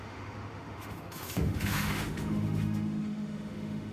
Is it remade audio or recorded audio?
remade